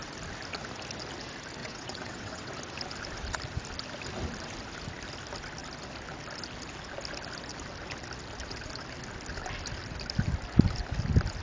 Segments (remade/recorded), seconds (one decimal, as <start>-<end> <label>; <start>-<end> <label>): 0.0-1.6 recorded; 1.6-2.5 remade; 2.5-11.4 recorded